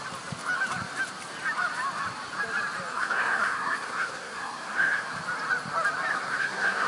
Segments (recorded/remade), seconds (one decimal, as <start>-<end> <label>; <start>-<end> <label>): 0.0-2.9 recorded; 2.9-5.1 remade; 5.1-6.1 recorded; 6.1-6.9 remade